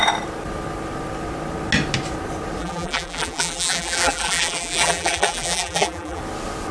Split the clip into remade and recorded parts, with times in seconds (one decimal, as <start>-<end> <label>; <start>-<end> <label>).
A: 0.0-2.6 recorded; 2.6-6.2 remade; 6.2-6.7 recorded